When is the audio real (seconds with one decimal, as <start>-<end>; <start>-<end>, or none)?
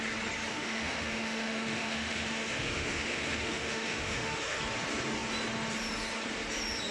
0.0-0.5; 4.6-6.9